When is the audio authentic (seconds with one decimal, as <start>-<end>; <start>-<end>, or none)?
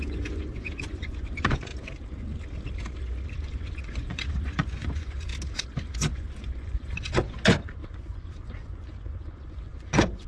1.7-3.3; 5.3-5.9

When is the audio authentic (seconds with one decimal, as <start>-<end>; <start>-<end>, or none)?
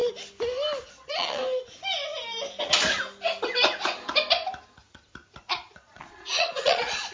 0.0-0.9; 1.4-5.4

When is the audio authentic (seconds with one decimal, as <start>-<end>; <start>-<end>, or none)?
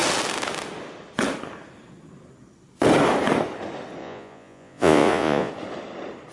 0.0-4.0; 5.5-6.3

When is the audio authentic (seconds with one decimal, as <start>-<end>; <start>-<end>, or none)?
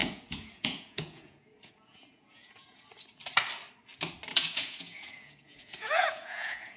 2.8-4.3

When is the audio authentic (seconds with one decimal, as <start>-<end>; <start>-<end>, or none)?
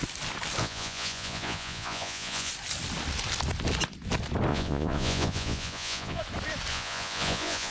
0.0-0.6; 2.5-4.5; 6.2-6.7